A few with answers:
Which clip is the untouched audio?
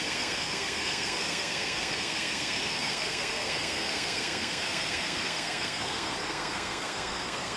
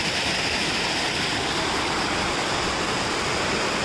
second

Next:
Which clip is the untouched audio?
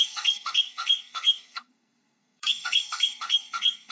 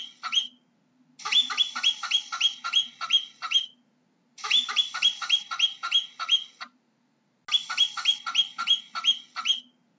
second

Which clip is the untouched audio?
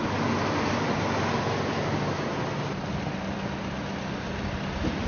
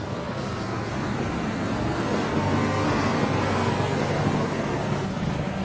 first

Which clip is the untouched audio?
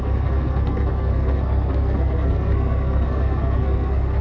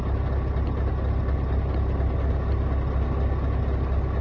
second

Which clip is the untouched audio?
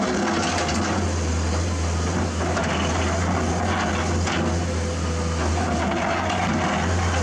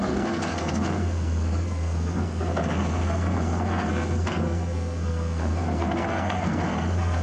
first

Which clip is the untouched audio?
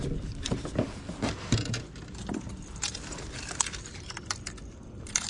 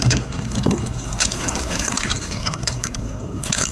first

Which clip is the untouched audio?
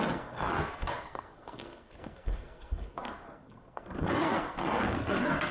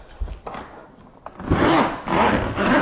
second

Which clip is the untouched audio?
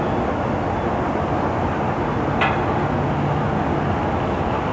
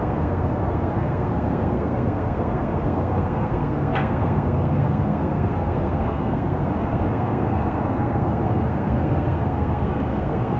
first